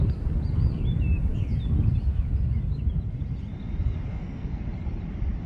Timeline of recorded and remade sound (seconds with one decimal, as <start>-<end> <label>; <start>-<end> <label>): 0.0-4.1 recorded; 4.1-4.6 remade; 4.6-5.5 recorded